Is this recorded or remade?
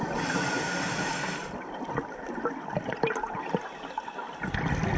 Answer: recorded